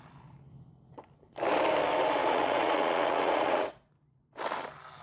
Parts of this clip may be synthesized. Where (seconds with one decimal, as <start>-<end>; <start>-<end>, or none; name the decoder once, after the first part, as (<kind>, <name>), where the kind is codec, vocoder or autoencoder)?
2.2-3.9 (vocoder, Vocos)